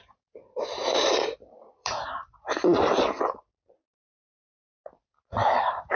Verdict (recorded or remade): remade